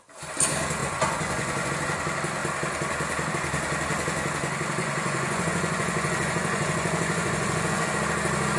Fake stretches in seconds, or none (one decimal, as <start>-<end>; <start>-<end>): 0.8-1.7; 4.8-7.9